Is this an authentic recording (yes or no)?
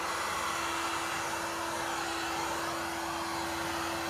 yes